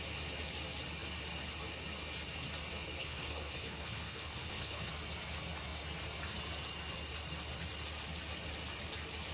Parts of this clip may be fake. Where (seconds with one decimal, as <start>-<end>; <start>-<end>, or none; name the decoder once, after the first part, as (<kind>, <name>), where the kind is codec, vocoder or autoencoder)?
3.0-4.9 (codec, HILCodec)